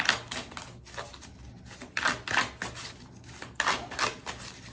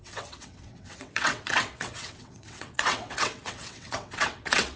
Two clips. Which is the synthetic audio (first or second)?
second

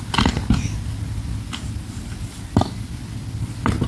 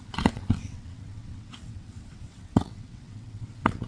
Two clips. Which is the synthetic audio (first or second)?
second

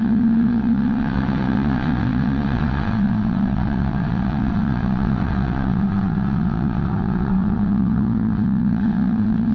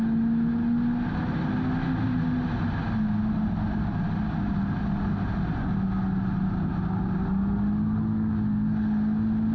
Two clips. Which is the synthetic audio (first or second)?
first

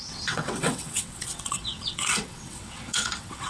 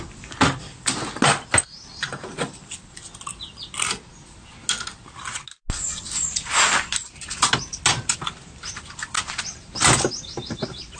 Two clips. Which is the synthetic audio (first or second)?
first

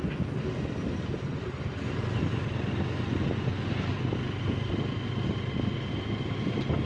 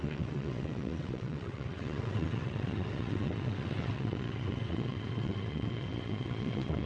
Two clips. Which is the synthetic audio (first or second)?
second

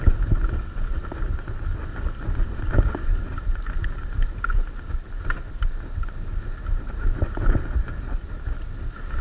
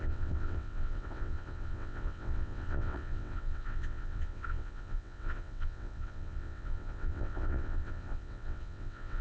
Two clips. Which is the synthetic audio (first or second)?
second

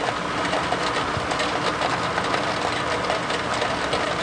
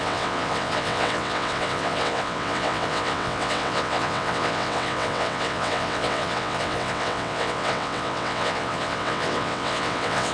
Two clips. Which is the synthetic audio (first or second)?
second